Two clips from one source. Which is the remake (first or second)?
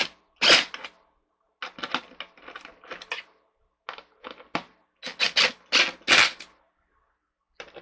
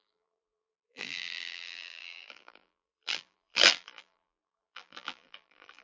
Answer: second